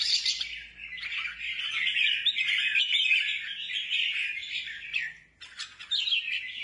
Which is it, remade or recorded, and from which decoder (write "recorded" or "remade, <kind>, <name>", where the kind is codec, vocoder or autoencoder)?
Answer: recorded